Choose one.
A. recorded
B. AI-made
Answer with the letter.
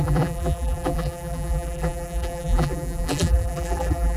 B